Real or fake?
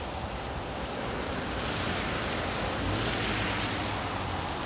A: real